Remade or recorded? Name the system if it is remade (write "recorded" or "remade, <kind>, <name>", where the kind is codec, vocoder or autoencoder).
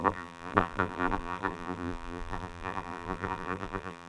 remade, vocoder, BigVGAN v2